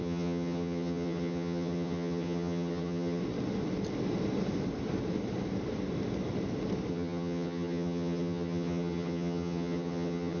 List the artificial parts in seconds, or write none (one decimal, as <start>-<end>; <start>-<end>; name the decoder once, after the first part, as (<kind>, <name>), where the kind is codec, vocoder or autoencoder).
0.0-3.2 (vocoder, HiFi-GAN); 6.9-10.4